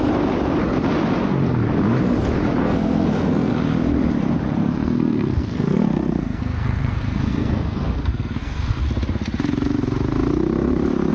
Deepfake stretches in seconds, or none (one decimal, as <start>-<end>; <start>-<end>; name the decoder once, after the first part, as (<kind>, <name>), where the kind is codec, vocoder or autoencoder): 2.6-3.5 (codec, SNAC); 4.6-8.8

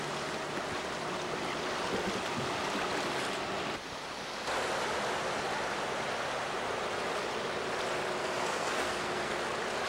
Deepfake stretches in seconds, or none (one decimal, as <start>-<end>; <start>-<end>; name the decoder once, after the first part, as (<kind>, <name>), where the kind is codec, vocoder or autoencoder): 8.2-9.4 (codec, SNAC)

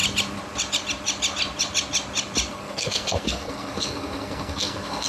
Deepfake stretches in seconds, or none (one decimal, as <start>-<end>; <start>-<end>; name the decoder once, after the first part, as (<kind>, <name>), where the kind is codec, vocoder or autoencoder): 2.5-5.1 (codec, SNAC)

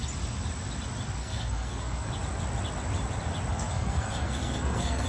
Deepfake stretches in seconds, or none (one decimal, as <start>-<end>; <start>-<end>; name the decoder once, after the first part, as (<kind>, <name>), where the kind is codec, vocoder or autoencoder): 1.2-2.1 (codec, SNAC); 3.5-5.1

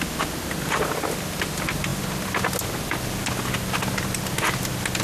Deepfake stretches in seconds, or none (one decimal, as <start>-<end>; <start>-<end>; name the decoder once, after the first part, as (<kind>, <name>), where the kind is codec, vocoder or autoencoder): none

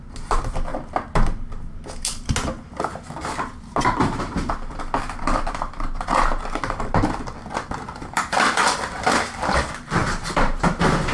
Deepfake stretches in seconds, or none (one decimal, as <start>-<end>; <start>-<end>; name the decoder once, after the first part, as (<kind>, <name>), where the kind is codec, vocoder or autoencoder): none